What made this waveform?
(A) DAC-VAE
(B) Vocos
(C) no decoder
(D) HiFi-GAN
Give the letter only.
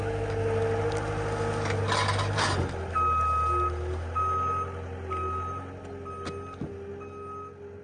C